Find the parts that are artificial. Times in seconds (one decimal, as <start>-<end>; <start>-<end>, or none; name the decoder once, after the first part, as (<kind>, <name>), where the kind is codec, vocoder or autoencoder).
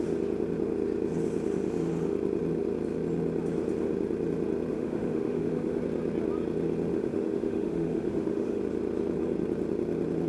4.7-5.8 (autoencoder, DAC-VAE); 6.9-8.6